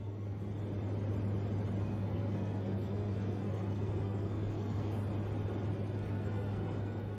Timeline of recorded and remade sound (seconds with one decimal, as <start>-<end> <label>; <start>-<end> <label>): 0.0-0.5 remade; 0.5-1.8 recorded; 1.8-5.0 remade; 5.0-5.7 recorded; 5.7-7.2 remade